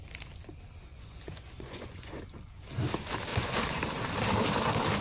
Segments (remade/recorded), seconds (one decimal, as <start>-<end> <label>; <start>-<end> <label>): 0.0-0.9 recorded; 0.9-2.2 remade; 2.2-3.3 recorded; 3.3-3.8 remade; 3.8-5.0 recorded